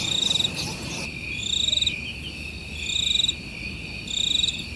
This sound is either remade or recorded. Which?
recorded